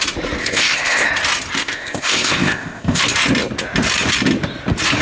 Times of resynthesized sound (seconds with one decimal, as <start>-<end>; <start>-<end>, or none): 0.4-1.1; 1.6-3.0